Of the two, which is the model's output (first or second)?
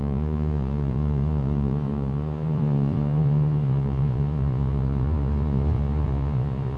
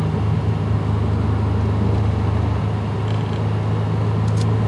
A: first